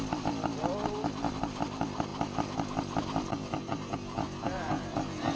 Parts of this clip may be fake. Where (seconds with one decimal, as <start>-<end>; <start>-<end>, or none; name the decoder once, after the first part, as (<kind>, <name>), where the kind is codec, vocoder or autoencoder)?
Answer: none